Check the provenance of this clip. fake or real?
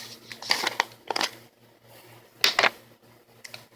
real